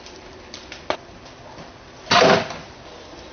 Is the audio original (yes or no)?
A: no